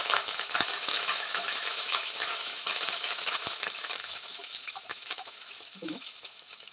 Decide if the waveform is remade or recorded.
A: remade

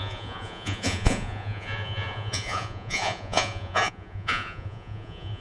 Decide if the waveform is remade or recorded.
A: remade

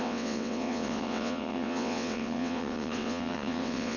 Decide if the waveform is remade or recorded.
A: remade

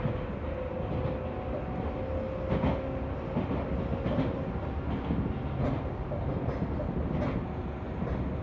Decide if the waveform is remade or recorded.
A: recorded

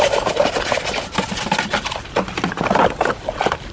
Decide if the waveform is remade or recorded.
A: recorded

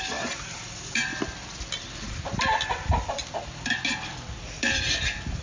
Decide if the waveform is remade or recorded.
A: remade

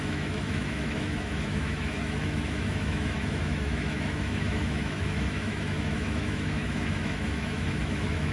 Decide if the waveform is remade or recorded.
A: remade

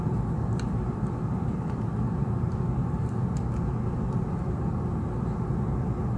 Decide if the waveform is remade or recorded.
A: recorded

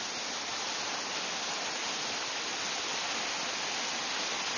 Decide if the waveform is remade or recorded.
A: recorded